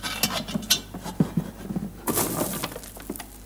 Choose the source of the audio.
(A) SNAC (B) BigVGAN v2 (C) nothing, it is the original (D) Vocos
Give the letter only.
C